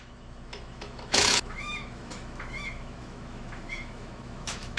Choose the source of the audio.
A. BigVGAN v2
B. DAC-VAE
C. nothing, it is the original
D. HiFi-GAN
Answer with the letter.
B